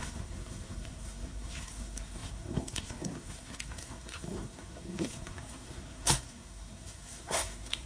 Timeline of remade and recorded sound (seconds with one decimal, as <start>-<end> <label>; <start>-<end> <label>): 0.0-7.9 remade